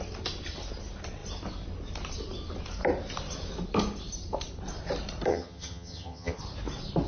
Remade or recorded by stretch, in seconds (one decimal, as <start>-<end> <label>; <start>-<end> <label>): 0.0-5.3 recorded; 5.3-6.4 remade; 6.4-7.1 recorded